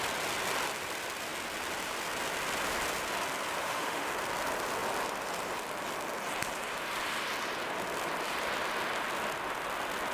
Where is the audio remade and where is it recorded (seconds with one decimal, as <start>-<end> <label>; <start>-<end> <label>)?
0.0-3.6 recorded; 3.6-4.1 remade; 4.1-10.1 recorded